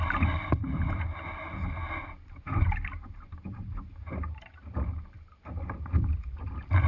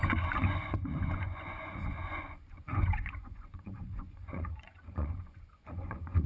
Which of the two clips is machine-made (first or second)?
second